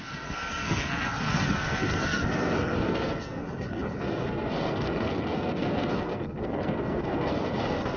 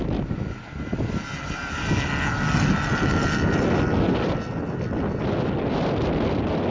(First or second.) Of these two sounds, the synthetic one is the first